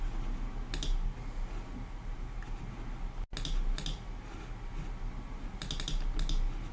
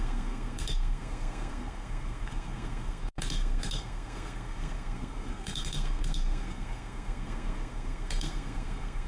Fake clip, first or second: second